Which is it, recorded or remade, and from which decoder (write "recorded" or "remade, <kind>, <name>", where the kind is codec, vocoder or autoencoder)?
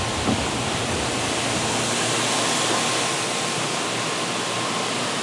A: recorded